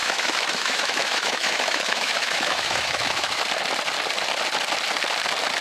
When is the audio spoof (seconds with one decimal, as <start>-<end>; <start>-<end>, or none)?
0.0-3.4